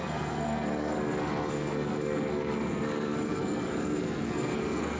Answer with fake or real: fake